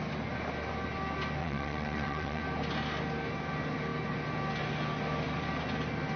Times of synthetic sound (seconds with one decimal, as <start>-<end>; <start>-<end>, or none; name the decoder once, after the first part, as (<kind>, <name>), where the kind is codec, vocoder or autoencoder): 1.4-2.4 (vocoder, WaveNeXt)